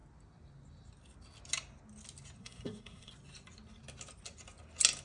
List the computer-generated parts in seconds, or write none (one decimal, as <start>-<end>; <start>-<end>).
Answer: 2.4-3.1